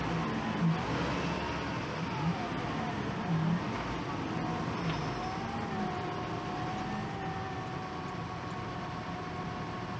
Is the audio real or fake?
real